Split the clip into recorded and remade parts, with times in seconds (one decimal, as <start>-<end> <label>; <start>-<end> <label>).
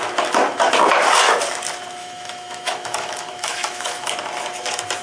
0.0-2.0 recorded; 2.0-4.1 remade; 4.1-5.0 recorded